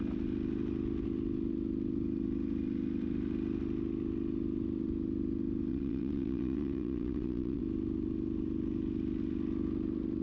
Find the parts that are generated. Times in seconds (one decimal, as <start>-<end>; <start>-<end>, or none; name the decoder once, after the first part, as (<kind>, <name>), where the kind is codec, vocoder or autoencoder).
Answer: 5.7-7.6 (vocoder, WaveNeXt)